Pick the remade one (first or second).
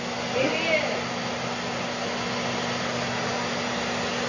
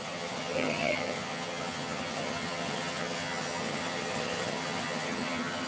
second